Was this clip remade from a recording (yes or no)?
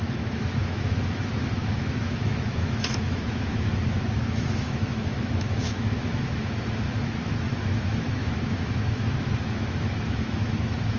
yes